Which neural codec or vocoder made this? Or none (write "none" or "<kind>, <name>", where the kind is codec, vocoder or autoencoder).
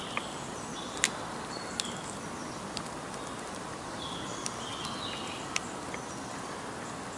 none